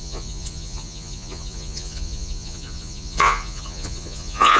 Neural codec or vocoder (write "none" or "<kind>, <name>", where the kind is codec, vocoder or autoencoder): vocoder, Vocos